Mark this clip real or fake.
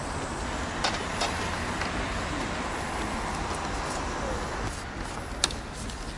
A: real